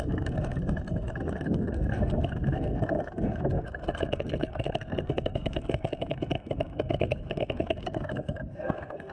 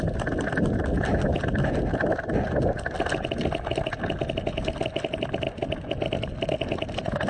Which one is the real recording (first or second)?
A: second